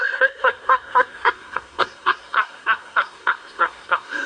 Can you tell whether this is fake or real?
fake